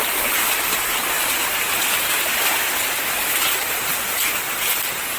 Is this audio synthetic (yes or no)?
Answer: no